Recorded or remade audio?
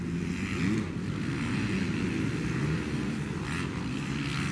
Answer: recorded